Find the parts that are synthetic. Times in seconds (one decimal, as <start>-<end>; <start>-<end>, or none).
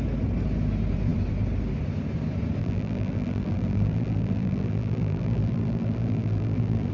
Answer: 2.6-6.9